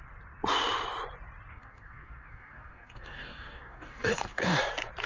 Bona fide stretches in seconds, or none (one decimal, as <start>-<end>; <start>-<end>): 0.0-1.5; 4.6-5.1